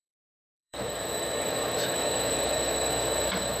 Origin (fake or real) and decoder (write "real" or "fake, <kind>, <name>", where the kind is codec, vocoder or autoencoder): fake, autoencoder, DAC-VAE